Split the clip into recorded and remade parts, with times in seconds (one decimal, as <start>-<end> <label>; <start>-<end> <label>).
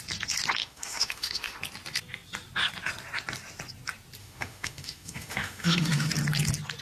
0.0-0.6 recorded; 0.6-1.6 remade; 1.6-4.2 recorded; 4.2-6.1 remade; 6.1-6.8 recorded